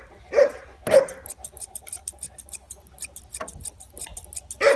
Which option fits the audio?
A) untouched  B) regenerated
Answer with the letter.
A